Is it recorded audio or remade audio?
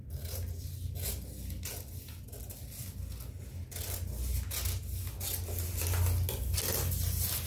recorded